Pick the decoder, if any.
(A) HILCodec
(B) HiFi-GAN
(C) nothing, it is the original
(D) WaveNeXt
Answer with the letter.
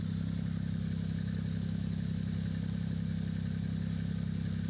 C